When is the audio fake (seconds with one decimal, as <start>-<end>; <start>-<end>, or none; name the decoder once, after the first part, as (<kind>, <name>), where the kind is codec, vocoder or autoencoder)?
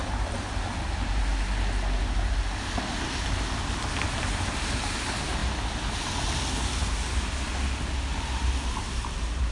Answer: 0.0-1.3 (vocoder, BigVGAN v2); 4.8-5.4; 8.7-9.5